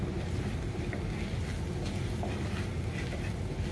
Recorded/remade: recorded